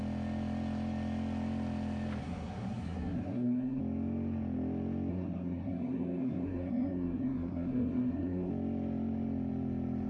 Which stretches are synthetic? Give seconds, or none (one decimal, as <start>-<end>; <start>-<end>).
2.2-3.8; 5.1-8.5